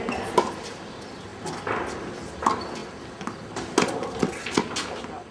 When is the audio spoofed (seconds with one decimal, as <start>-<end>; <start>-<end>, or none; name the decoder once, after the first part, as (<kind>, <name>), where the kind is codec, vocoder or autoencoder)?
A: none